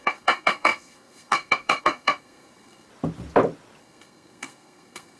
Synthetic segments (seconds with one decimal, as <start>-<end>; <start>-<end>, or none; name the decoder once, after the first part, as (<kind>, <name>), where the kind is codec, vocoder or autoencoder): 0.0-2.9 (codec, SNAC); 3.8-5.2